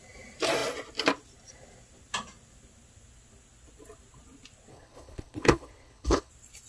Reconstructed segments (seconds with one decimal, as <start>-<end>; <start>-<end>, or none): 4.7-6.3